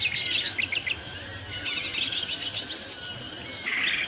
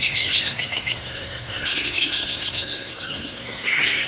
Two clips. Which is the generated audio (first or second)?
second